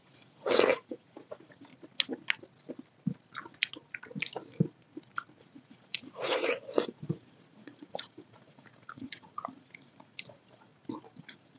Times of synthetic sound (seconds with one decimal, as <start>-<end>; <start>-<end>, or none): 0.0-1.7; 5.4-10.7; 11.2-11.6